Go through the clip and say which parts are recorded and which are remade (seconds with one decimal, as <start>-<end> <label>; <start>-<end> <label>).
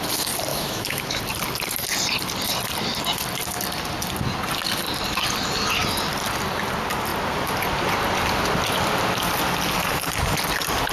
0.0-0.5 recorded; 0.5-1.2 remade; 1.2-10.9 recorded